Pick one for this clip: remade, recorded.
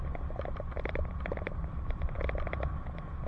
recorded